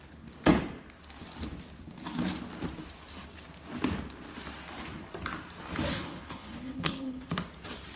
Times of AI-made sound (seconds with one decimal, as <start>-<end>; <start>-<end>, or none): 5.9-7.3